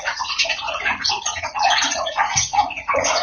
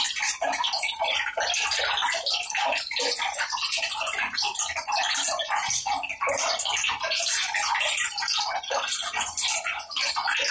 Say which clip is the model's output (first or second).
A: first